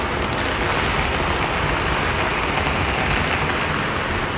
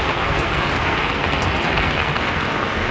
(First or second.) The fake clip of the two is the second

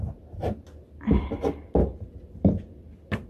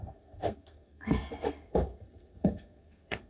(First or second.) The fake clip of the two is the second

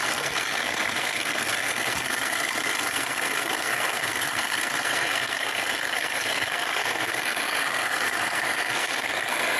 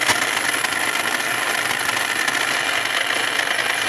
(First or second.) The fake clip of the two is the first